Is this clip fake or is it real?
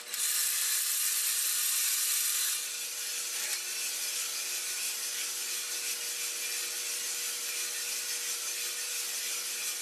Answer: real